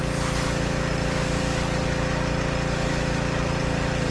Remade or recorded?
recorded